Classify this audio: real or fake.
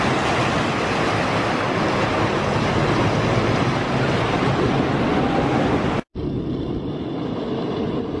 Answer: real